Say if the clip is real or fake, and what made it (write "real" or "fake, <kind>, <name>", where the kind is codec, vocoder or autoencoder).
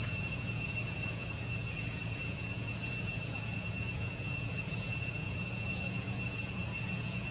fake, vocoder, Vocos